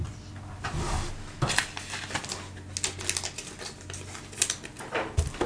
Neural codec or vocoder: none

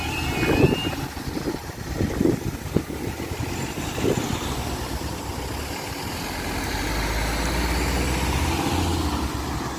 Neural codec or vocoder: none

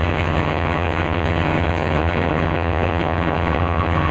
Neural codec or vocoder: vocoder, HiFi-GAN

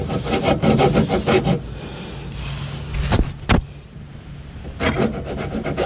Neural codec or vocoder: none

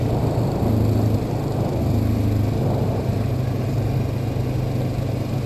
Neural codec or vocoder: none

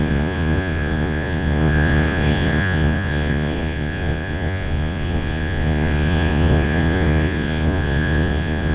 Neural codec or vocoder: vocoder, Vocos